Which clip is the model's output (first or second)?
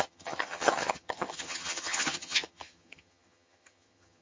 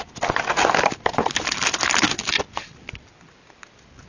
first